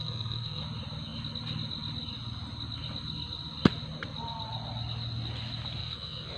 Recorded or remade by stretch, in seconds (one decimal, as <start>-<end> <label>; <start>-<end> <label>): 0.0-0.6 remade; 0.6-5.8 recorded; 5.8-6.4 remade